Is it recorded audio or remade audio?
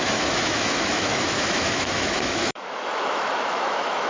remade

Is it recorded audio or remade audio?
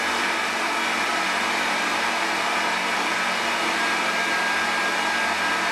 recorded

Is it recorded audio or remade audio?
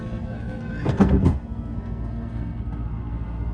remade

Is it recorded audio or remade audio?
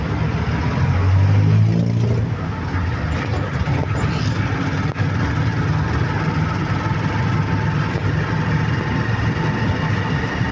recorded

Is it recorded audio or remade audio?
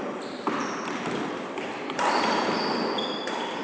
remade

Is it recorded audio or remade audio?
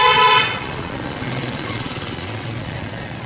remade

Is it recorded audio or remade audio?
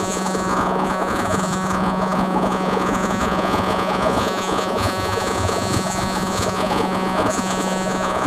remade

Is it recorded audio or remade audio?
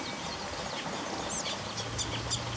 recorded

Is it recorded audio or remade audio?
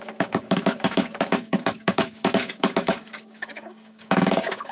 remade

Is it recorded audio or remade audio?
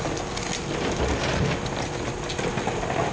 recorded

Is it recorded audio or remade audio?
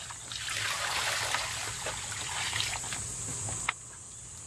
recorded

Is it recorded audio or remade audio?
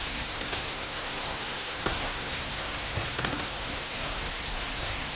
remade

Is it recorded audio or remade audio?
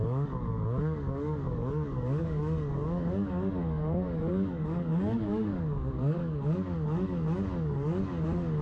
remade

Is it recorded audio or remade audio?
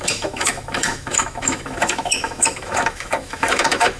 remade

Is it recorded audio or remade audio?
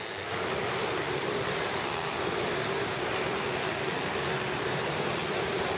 recorded